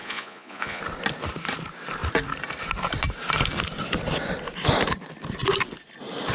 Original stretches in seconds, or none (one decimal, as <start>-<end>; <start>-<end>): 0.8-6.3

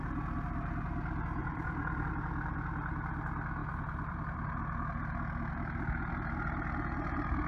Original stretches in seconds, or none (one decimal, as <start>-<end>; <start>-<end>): 0.0-1.4; 2.1-3.6; 6.1-7.5

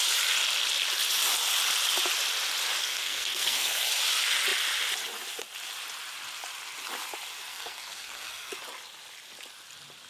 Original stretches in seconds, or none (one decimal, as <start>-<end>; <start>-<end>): 0.0-2.8; 3.9-7.5; 8.5-10.1

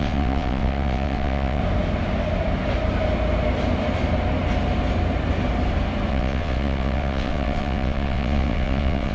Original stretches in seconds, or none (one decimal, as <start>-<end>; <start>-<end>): 1.6-6.1